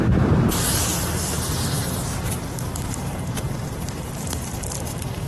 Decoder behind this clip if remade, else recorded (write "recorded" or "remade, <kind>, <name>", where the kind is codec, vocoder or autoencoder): remade, vocoder, BigVGAN v2